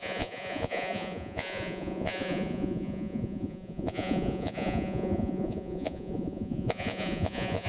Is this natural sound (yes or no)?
no